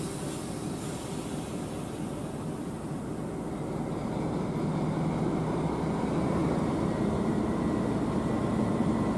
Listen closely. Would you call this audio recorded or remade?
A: recorded